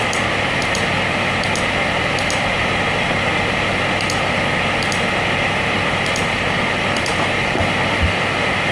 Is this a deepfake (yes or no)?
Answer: no